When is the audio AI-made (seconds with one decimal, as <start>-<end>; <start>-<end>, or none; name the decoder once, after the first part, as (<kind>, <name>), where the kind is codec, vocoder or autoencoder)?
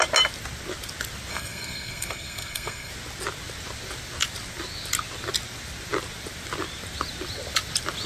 1.3-2.9 (codec, SNAC)